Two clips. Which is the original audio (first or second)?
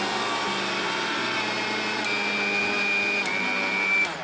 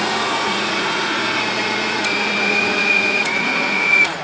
first